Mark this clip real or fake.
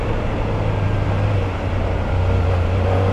real